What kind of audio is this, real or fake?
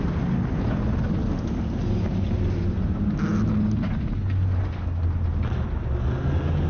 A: real